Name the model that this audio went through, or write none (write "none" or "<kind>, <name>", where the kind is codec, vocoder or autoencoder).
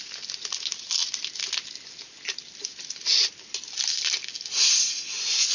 none